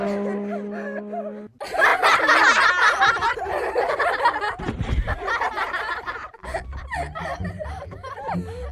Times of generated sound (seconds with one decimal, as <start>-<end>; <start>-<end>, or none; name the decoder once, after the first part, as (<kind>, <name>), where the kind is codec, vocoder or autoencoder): none

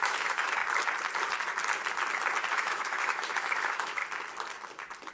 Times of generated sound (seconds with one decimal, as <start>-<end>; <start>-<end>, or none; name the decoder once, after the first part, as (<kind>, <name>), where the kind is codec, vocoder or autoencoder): 0.0-0.6 (autoencoder, DAC-VAE); 2.5-4.0

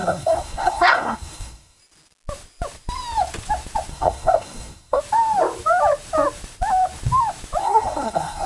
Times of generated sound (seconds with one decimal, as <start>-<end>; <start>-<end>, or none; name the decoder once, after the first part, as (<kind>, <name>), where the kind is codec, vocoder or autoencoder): 0.0-1.8 (codec, SNAC); 3.9-5.0; 7.6-8.5

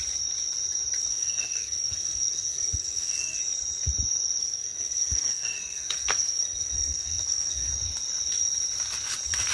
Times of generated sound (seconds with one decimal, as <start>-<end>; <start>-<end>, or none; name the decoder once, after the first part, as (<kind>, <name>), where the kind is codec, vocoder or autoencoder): 1.1-3.4 (codec, SNAC); 4.4-7.7